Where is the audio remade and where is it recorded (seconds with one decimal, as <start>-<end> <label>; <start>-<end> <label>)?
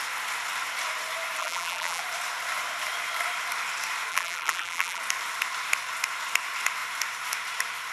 0.0-1.4 recorded; 1.4-2.0 remade; 2.0-4.1 recorded; 4.1-5.0 remade; 5.0-7.9 recorded